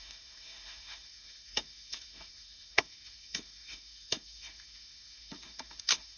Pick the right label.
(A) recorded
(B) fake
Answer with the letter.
B